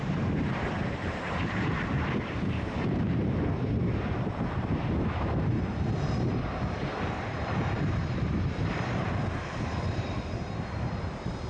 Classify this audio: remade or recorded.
remade